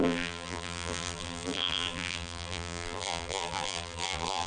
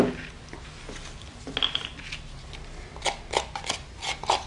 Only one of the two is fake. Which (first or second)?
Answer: first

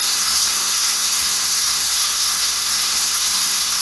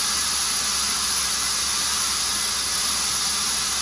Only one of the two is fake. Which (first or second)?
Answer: first